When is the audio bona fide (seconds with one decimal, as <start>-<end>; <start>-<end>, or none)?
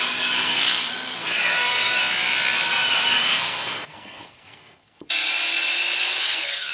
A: 2.0-2.7; 5.3-6.2